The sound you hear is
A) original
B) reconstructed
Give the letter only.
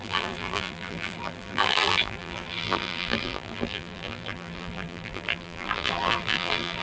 B